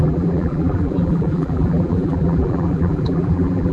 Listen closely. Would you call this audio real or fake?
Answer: fake